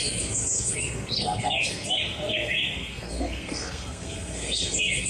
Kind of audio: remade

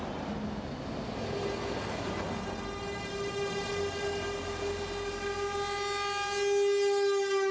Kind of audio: recorded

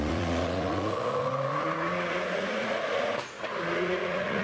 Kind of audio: remade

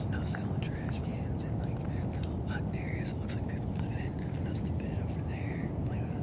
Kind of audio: recorded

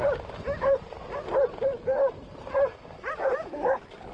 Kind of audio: recorded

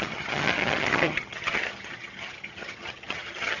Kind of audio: remade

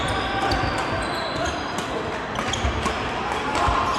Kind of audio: recorded